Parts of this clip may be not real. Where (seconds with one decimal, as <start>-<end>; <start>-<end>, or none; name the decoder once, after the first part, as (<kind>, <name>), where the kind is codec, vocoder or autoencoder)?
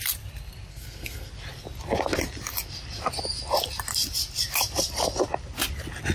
0.7-1.3 (codec, SNAC)